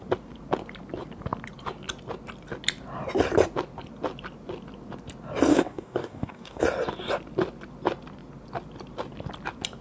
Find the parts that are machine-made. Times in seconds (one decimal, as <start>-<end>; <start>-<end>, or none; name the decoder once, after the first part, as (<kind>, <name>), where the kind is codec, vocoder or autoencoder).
5.5-6.6 (codec, DAC)